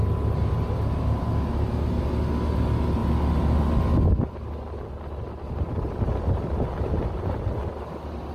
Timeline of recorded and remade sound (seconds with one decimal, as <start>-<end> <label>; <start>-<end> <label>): 0.0-0.4 recorded; 0.4-2.0 remade; 2.0-8.3 recorded